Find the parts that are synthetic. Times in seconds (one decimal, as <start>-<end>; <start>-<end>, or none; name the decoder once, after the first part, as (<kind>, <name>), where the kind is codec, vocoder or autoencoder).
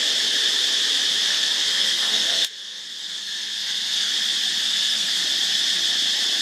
1.3-4.1 (codec, SNAC); 4.7-5.2